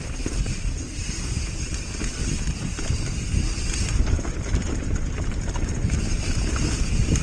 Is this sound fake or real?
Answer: real